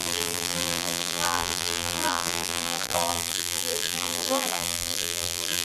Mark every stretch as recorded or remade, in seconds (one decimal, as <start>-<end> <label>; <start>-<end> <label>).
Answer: 0.0-5.6 remade